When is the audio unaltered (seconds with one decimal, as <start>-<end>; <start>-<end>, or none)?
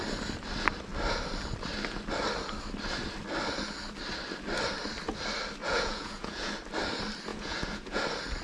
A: 0.0-5.6; 6.5-7.3; 8.0-8.4